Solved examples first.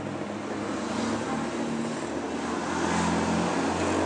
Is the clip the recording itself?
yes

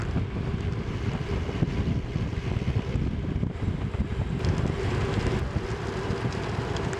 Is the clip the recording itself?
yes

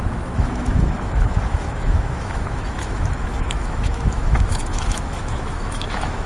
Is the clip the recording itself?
no